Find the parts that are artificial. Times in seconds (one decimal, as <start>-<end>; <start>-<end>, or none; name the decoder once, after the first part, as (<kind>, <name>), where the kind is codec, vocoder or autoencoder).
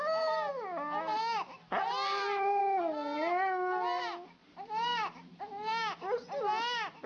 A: 4.4-5.4 (vocoder, BigVGAN v2)